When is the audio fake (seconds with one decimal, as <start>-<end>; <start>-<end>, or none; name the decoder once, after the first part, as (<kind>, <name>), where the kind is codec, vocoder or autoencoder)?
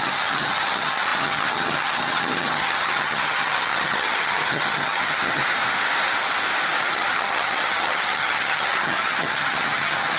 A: 0.0-5.4 (vocoder, HiFi-GAN); 6.8-10.2